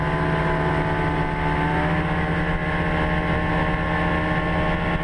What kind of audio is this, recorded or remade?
recorded